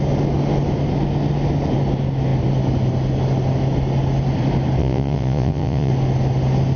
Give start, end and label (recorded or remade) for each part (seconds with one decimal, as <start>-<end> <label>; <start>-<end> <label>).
0.0-4.8 recorded; 4.8-5.9 remade; 5.9-6.8 recorded